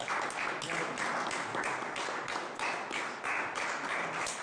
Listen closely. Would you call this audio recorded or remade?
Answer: recorded